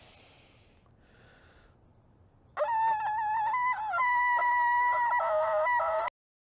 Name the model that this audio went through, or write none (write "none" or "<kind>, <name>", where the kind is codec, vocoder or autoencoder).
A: none